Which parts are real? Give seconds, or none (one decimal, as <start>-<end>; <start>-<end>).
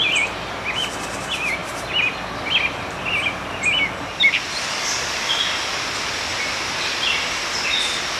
0.0-4.7; 5.4-8.2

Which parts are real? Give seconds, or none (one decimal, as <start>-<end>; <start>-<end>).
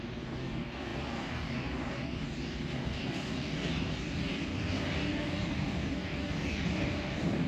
none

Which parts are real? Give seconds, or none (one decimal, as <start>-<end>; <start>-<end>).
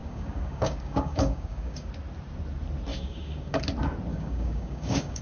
1.9-2.9; 3.6-4.1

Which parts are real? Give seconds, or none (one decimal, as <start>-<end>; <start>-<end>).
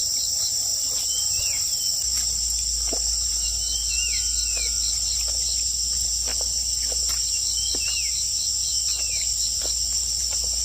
0.0-10.6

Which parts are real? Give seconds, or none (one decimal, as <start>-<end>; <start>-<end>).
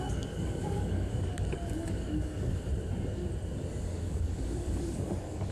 2.7-3.8